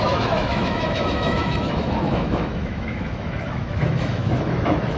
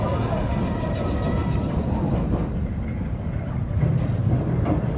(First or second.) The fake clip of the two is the first